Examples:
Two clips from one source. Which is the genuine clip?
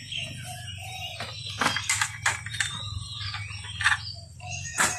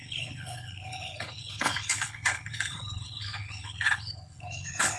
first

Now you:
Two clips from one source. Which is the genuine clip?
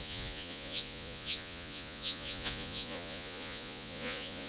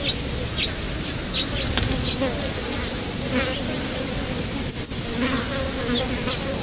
second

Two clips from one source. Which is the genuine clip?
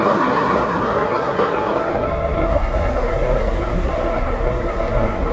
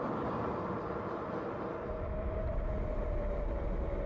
second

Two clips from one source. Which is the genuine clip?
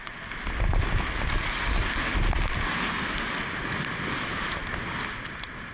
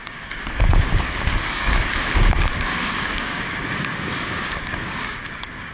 first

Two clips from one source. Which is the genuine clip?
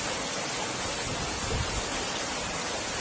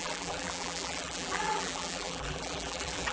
first